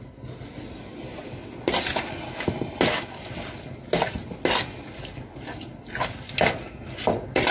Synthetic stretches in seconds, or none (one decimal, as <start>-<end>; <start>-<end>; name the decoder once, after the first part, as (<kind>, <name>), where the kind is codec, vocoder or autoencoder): none